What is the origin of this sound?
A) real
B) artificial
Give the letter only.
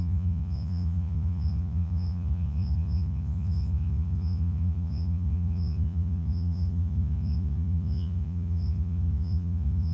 B